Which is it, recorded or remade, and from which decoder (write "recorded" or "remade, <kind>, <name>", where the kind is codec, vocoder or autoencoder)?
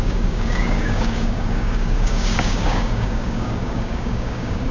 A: remade, codec, DAC